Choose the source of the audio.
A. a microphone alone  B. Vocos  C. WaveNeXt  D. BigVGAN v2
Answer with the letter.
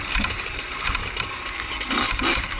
D